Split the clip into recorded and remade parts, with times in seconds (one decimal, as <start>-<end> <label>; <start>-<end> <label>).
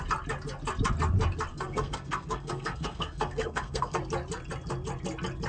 0.0-1.5 recorded; 1.5-4.0 remade; 4.0-5.5 recorded